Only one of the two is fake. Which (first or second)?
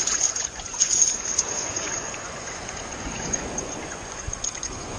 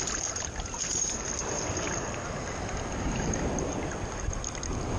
first